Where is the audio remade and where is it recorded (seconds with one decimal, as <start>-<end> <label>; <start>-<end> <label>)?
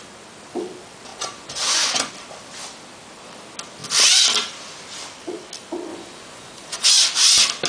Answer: 0.0-1.1 recorded; 1.1-2.1 remade; 2.1-5.9 recorded; 5.9-6.9 remade; 6.9-7.7 recorded